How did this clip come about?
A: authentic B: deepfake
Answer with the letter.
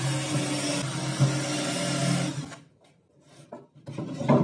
A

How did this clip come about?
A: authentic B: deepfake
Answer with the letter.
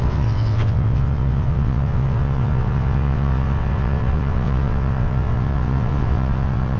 B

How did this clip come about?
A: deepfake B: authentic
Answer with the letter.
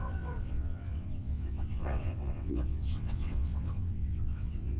A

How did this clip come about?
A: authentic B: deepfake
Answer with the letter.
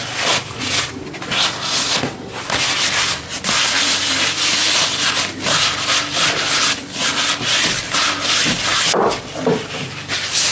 A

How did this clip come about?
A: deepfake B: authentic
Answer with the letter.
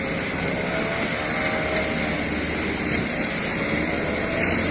B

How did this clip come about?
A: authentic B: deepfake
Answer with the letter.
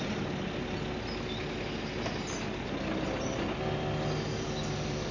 A